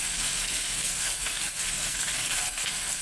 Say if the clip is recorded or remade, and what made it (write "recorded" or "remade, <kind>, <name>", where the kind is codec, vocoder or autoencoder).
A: remade, codec, SNAC